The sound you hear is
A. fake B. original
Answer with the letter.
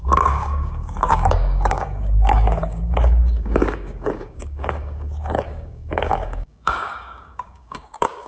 A